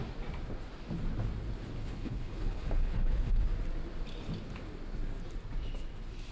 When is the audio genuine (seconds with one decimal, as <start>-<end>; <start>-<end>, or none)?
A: 0.0-1.8; 3.4-6.3